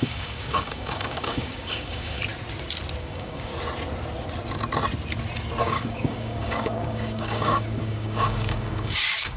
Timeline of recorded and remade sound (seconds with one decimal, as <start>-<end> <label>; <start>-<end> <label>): 0.0-2.2 remade; 2.2-3.0 recorded; 3.0-3.5 remade; 3.5-5.6 recorded; 5.6-9.4 remade